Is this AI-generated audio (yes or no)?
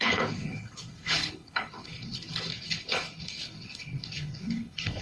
yes